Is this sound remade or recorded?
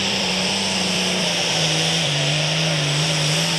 remade